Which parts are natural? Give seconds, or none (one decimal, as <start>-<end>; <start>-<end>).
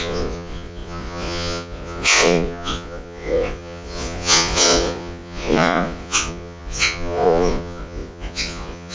none